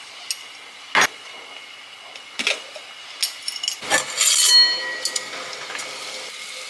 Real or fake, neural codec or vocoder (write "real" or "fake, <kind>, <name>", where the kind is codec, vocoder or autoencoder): real